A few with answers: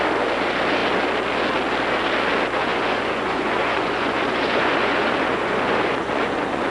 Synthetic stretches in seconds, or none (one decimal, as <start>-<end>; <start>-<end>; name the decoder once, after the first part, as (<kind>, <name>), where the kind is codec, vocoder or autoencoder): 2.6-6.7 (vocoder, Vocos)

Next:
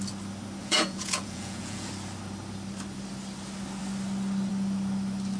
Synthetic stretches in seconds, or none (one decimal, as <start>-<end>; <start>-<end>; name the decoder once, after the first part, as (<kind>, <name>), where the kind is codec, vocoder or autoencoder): 0.6-1.9 (vocoder, Vocos)

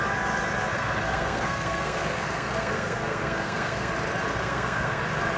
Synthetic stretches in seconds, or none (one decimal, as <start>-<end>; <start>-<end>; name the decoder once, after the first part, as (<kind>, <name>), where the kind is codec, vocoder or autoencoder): 0.7-3.9 (codec, SNAC); 4.3-5.0

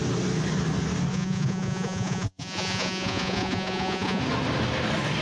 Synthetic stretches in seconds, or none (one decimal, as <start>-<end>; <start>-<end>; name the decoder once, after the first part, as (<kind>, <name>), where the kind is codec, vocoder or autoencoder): 1.1-4.2 (vocoder, Vocos)

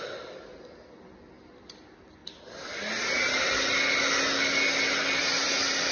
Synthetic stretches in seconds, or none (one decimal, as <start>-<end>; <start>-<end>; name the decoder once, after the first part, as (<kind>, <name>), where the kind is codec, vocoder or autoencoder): none